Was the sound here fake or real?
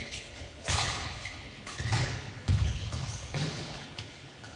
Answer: fake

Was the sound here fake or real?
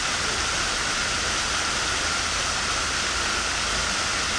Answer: real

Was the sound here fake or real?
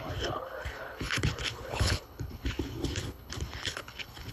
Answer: fake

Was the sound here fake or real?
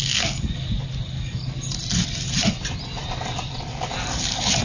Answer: real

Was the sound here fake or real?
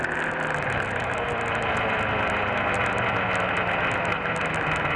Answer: real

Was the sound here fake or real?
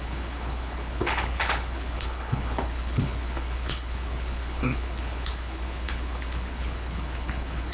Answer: fake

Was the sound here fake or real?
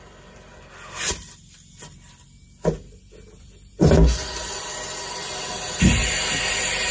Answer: real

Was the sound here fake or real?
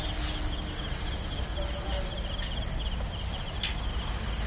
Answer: real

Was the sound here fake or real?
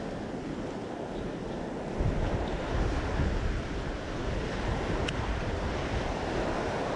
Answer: real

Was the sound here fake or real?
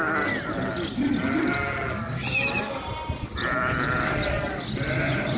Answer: real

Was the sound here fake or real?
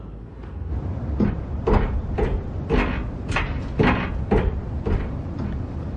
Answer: real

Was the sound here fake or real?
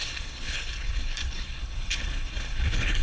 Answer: fake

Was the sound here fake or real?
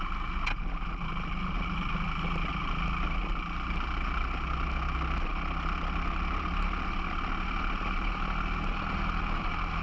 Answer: real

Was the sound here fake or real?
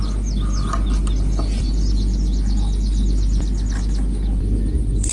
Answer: real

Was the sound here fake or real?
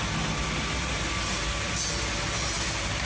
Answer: real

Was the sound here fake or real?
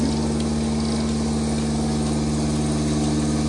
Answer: real